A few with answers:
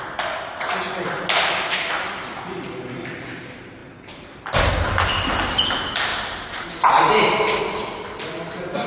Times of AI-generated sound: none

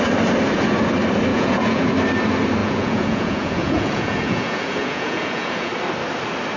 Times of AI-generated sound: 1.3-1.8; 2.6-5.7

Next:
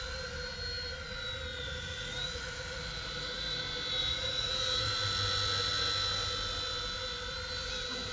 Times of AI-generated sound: 1.5-3.6; 4.0-4.9